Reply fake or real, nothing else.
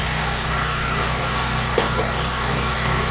fake